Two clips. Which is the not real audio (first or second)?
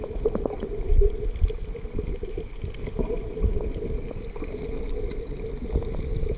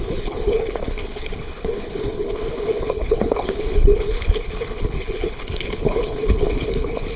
second